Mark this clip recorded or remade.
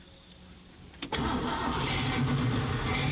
recorded